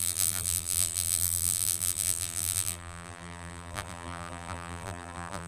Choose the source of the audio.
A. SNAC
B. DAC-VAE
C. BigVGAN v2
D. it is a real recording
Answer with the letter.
C